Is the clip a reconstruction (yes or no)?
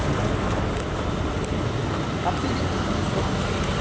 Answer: no